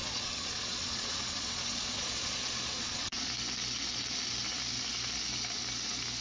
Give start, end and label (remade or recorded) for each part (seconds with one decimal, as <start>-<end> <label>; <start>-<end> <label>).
0.0-3.3 remade; 3.3-6.2 recorded